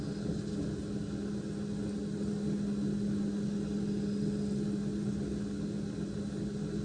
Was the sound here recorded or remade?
recorded